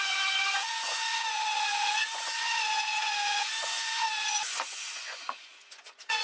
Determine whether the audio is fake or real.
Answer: fake